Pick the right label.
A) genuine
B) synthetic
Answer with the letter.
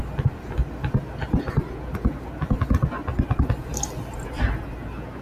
A